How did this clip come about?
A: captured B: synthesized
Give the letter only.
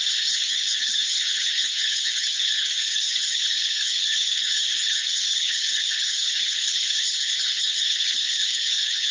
B